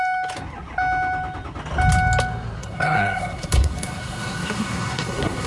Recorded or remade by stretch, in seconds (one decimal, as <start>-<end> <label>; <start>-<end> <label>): 0.0-2.6 recorded; 2.6-5.5 remade